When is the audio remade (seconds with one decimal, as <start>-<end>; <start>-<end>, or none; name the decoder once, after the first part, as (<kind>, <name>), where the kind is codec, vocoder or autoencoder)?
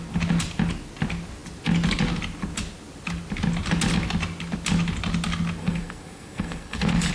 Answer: 5.6-7.1 (codec, SNAC)